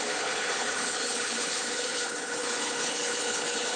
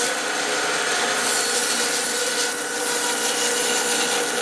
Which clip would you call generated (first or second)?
first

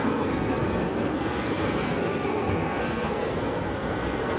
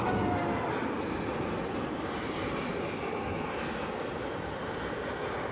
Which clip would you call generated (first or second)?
first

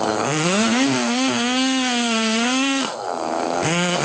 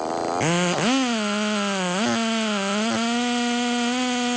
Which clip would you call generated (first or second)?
first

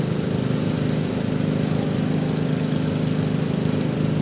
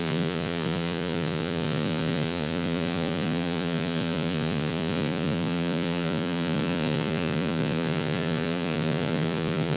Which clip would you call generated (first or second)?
second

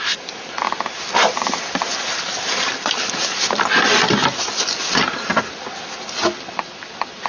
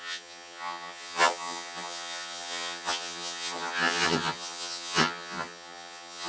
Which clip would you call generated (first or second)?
second